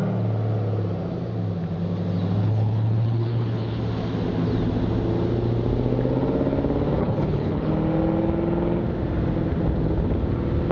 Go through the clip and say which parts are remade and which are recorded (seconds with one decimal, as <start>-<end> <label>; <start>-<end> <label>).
0.0-2.4 recorded; 2.4-3.8 remade; 3.8-7.0 recorded; 7.0-7.7 remade; 7.7-10.7 recorded